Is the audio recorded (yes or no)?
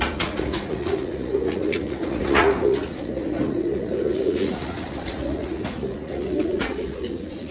no